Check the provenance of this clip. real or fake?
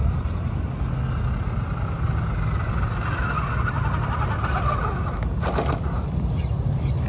real